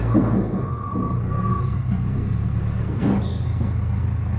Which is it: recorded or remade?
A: remade